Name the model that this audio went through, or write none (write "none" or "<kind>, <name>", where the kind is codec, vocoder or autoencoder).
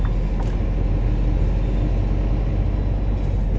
none